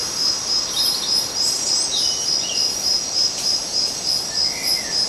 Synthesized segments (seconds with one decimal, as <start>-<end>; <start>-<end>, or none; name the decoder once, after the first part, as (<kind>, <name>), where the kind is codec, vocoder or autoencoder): 0.6-1.9 (vocoder, BigVGAN v2)